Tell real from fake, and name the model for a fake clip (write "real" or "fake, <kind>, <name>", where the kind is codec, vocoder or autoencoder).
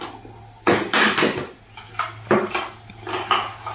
real